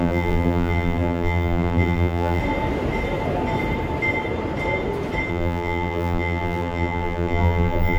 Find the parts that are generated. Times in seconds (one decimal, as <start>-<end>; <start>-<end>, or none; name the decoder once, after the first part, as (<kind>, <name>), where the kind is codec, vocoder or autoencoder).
0.0-2.4 (vocoder, BigVGAN v2); 5.3-8.0